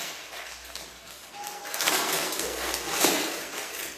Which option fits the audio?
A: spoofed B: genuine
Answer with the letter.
A